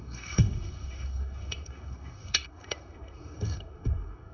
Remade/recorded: remade